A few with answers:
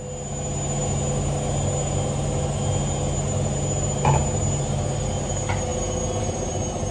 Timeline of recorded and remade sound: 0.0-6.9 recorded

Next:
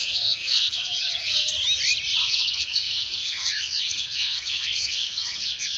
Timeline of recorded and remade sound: 0.0-1.5 remade; 1.5-2.2 recorded; 2.2-5.8 remade